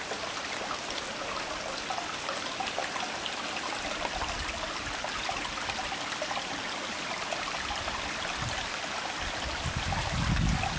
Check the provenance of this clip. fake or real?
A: real